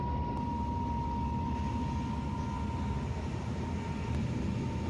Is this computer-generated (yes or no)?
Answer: no